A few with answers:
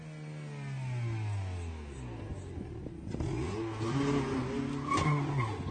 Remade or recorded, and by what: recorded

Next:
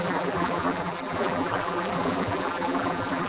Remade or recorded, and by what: remade, vocoder, BigVGAN v2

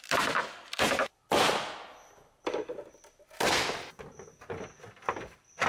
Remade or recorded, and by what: recorded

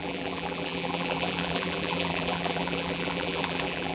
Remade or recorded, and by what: remade, vocoder, BigVGAN v2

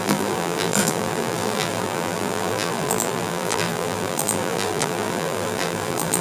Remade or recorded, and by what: remade, vocoder, BigVGAN v2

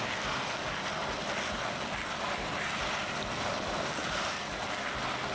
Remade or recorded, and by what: recorded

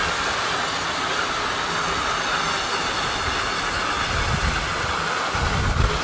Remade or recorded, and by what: recorded